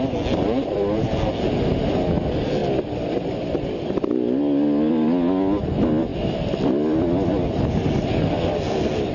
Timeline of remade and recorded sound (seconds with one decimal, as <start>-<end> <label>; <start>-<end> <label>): 0.0-9.1 recorded